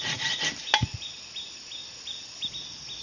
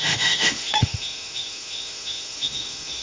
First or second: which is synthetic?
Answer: second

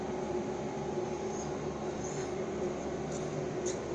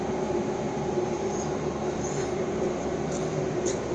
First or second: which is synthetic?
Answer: second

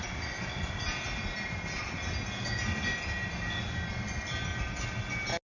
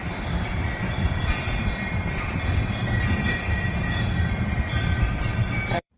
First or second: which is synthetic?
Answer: second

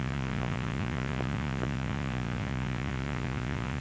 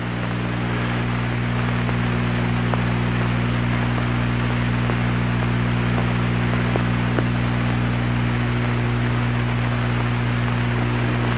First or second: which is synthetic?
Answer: first